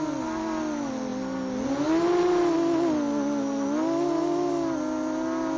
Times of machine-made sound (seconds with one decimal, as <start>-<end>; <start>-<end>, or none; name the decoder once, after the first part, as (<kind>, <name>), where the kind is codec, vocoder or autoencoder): none